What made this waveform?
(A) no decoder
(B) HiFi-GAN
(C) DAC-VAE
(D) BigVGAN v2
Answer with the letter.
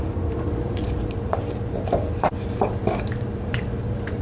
D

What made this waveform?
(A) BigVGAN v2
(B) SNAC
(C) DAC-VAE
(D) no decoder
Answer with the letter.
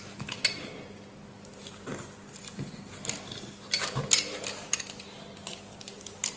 D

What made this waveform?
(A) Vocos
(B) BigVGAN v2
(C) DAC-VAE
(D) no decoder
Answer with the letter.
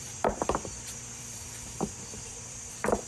B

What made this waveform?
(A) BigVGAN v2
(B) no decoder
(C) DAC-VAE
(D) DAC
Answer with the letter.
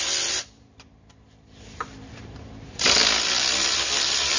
A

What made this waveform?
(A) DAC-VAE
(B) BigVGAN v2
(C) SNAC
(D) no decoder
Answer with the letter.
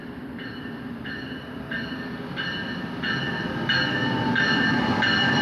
D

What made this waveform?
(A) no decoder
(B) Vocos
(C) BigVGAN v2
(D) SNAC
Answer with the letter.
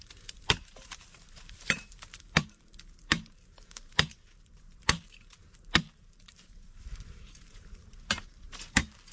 C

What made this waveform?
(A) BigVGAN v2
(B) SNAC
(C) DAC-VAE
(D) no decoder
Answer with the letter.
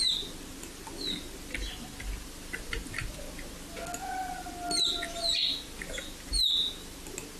D